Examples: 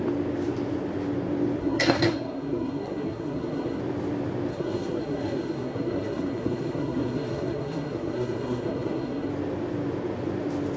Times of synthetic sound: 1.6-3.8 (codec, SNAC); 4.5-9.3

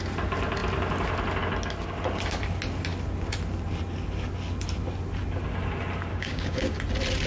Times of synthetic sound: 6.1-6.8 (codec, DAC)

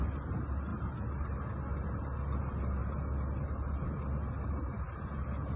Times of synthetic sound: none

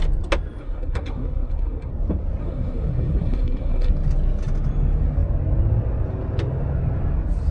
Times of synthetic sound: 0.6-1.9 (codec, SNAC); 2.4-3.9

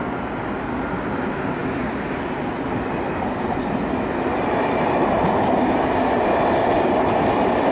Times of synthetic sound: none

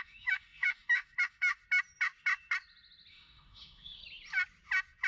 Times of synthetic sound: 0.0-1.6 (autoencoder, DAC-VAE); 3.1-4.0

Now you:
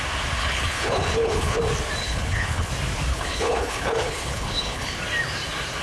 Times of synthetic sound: 0.4-1.6 (codec, HILCodec); 2.0-2.7; 3.1-5.0